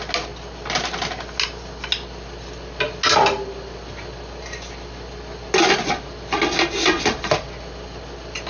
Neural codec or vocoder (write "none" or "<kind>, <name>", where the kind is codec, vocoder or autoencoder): none